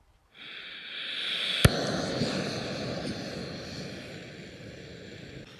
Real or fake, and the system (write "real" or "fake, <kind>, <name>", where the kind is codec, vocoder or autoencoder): real